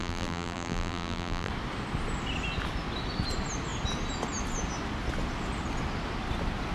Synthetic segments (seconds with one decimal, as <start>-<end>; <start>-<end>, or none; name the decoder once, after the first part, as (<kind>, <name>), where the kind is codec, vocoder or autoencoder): 0.0-1.5 (vocoder, BigVGAN v2)